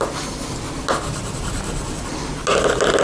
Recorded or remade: recorded